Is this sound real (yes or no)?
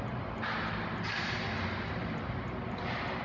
yes